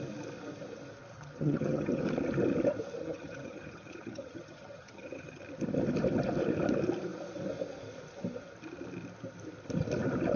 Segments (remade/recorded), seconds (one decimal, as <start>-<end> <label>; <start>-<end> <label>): 0.0-1.1 recorded; 1.1-2.0 remade; 2.0-3.0 recorded; 3.0-5.4 remade; 5.4-10.4 recorded